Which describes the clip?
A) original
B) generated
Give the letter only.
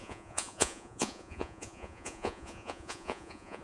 B